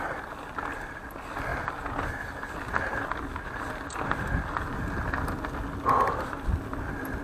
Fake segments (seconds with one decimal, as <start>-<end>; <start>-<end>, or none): none